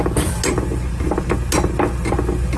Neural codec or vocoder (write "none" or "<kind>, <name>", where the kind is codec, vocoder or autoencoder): none